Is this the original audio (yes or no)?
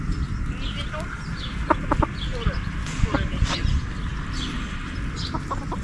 yes